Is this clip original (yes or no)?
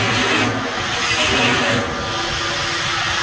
yes